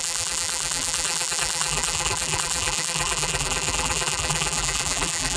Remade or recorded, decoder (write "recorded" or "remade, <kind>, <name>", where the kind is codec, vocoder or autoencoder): remade, vocoder, BigVGAN v2